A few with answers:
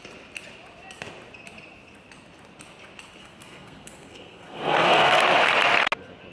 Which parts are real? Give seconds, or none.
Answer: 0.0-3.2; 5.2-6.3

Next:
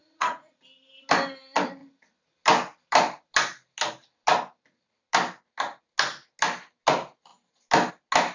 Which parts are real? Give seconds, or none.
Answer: 0.5-8.3

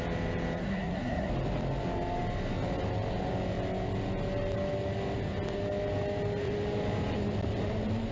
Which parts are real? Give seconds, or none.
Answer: 0.0-0.6; 1.3-8.1

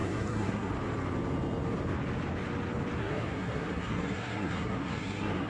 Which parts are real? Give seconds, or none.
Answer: 0.7-3.0

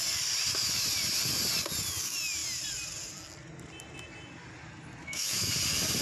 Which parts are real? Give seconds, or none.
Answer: 0.0-5.0; 5.5-6.0